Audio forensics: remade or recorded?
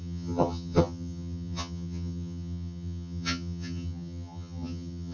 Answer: remade